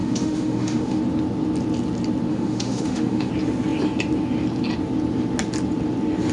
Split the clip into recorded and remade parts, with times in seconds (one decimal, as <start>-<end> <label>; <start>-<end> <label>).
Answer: 0.0-1.0 remade; 1.0-2.3 recorded; 2.3-3.3 remade; 3.3-6.3 recorded